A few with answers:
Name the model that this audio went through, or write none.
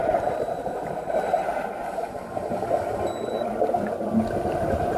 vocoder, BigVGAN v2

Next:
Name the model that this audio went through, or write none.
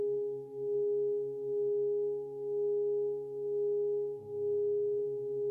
none